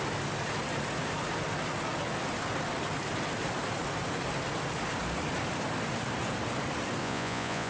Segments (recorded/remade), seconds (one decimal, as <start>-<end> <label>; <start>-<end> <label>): 0.0-7.0 recorded; 7.0-7.7 remade